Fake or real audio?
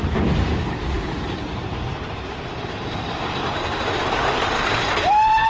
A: fake